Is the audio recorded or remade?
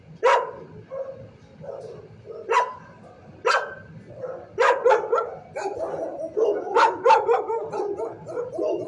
recorded